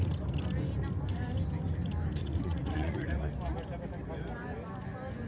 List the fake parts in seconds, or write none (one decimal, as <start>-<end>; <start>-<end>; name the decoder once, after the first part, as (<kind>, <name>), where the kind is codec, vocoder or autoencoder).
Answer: 2.2-3.3 (vocoder, Vocos)